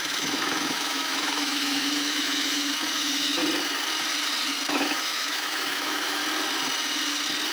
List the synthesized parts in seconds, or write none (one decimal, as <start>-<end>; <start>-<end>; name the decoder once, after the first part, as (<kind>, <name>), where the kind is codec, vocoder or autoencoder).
0.0-3.4 (autoencoder, DAC-VAE); 4.7-6.2